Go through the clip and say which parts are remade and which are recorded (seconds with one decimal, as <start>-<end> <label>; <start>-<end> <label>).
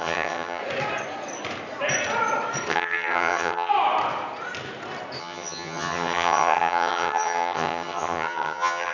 0.0-0.6 remade; 0.6-2.7 recorded; 2.7-3.7 remade; 3.7-5.2 recorded; 5.2-8.9 remade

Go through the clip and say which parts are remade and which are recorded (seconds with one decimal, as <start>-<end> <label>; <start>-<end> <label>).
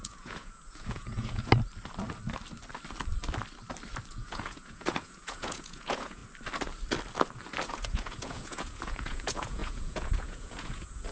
0.0-1.5 remade; 1.5-4.1 recorded; 4.1-6.2 remade; 6.2-7.7 recorded; 7.7-11.1 remade